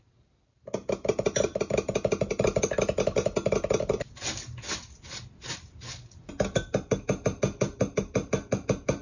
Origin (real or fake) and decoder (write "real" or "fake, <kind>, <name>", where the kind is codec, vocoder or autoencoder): real